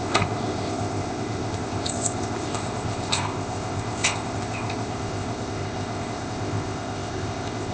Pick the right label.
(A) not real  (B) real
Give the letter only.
A